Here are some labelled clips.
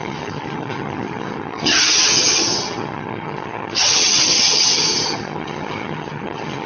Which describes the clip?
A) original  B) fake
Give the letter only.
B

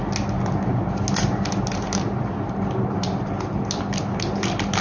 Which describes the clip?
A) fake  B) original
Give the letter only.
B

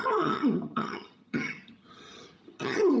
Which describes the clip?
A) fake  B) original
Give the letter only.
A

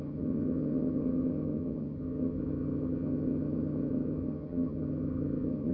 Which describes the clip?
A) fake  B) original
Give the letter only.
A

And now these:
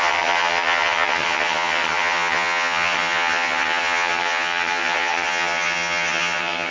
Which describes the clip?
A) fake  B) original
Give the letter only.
A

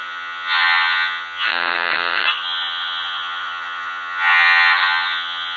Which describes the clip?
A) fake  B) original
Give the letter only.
A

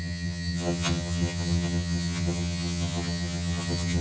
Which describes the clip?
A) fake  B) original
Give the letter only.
A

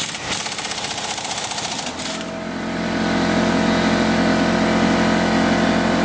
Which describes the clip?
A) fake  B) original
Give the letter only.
B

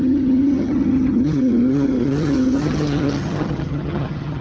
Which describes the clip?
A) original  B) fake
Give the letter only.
B